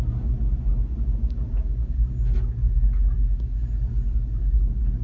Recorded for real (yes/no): yes